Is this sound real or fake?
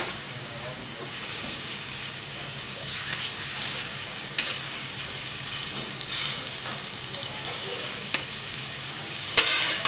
fake